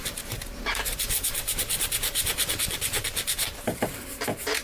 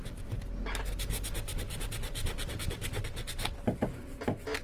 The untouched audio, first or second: second